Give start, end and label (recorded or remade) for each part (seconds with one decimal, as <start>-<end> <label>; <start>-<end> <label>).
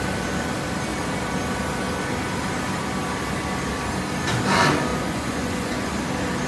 0.0-4.9 recorded; 4.9-5.9 remade; 5.9-6.5 recorded